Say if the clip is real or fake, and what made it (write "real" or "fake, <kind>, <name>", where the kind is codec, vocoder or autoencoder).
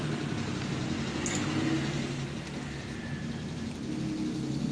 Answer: real